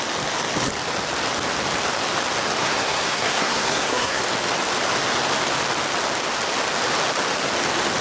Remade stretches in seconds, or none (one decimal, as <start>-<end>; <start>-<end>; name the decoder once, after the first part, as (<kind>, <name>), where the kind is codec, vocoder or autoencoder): 2.6-4.2 (codec, SNAC)